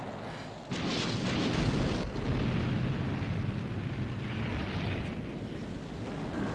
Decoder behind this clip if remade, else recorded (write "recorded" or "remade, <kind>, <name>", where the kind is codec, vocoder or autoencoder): recorded